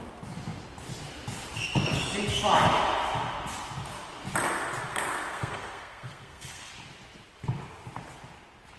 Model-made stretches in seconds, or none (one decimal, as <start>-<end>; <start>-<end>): 4.9-6.7